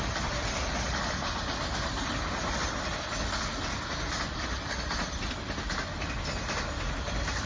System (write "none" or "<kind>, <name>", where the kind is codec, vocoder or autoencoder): none